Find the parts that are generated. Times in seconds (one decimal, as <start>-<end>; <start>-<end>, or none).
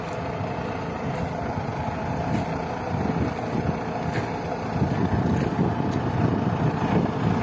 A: none